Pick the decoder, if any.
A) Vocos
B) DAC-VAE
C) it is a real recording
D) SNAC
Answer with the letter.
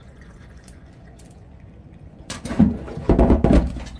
A